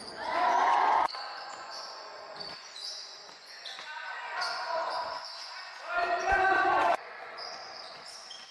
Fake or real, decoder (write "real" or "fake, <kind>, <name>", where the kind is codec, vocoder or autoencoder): fake, vocoder, Vocos